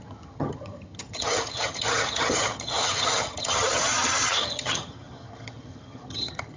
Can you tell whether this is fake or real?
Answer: fake